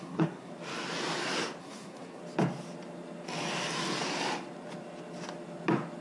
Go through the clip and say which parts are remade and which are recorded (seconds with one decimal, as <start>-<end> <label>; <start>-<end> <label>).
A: 0.0-0.5 remade; 0.5-1.6 recorded; 1.6-2.2 remade; 2.2-6.0 recorded